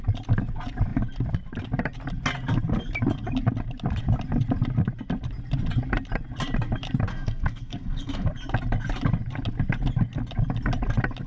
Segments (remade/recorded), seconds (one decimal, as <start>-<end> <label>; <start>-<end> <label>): 0.0-7.1 recorded; 7.1-8.3 remade; 8.3-11.3 recorded